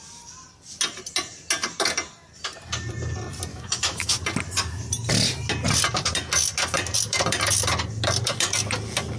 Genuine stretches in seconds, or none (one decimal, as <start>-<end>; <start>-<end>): 0.0-3.5; 4.1-9.2